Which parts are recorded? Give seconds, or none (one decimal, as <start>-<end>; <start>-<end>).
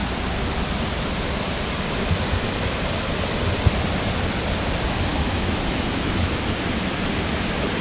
0.0-5.1; 6.3-7.8